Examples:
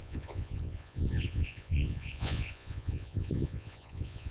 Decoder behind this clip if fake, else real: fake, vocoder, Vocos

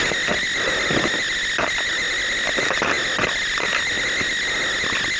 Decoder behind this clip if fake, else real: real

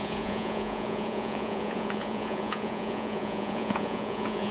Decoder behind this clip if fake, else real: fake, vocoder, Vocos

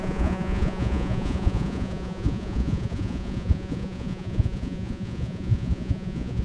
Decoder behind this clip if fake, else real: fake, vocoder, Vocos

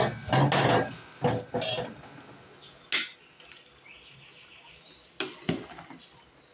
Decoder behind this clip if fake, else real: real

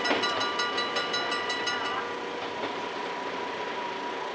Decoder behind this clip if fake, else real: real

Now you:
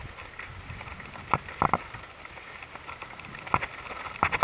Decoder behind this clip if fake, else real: real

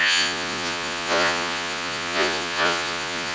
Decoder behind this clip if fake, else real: fake, vocoder, Vocos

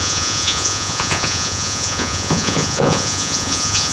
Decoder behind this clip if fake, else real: fake, vocoder, Vocos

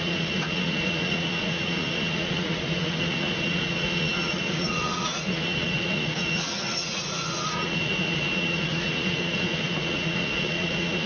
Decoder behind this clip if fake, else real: fake, vocoder, Vocos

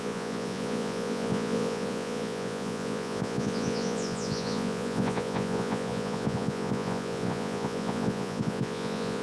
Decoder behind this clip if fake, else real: fake, vocoder, Vocos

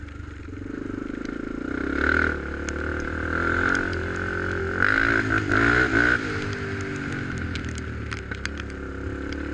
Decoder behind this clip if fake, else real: real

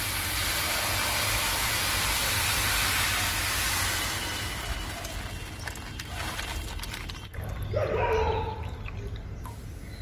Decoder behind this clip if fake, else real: real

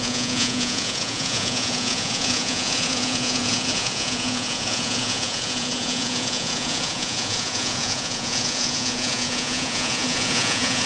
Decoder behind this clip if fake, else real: fake, vocoder, Vocos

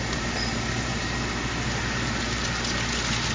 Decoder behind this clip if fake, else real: real